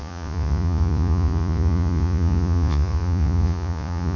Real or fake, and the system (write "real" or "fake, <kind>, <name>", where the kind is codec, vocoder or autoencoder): fake, vocoder, Vocos